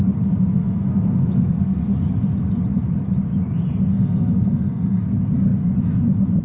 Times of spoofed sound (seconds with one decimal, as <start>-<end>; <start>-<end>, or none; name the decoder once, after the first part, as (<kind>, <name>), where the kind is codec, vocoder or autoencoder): 0.5-1.9 (codec, SNAC); 3.9-5.0